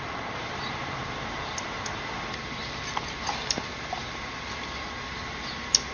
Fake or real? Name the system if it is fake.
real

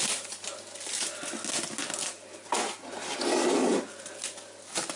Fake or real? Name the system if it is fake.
real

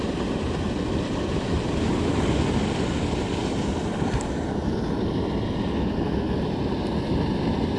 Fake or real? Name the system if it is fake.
real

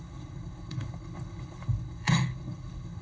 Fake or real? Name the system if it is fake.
fake, codec, HILCodec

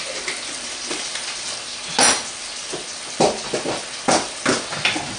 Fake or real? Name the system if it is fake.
real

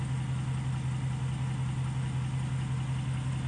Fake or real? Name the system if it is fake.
real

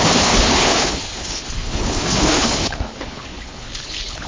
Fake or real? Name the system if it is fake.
fake, codec, HILCodec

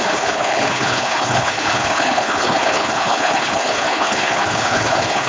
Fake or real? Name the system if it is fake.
fake, codec, HILCodec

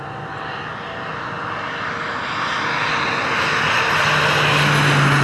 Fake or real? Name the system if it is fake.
real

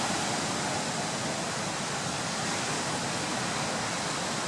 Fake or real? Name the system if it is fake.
real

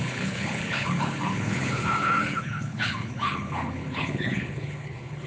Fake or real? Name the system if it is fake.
fake, codec, HILCodec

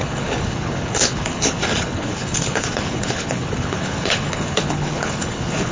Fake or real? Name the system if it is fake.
fake, codec, HILCodec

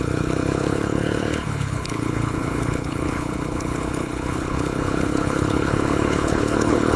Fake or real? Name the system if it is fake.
fake, codec, HILCodec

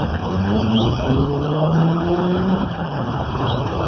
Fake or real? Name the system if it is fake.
fake, codec, HILCodec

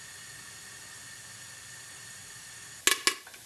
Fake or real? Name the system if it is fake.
real